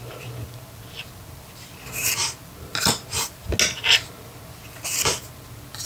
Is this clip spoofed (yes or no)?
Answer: no